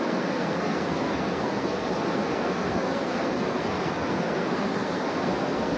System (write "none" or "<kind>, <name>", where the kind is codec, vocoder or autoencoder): codec, SNAC